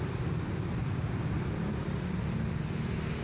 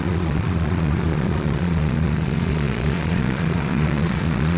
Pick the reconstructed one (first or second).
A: second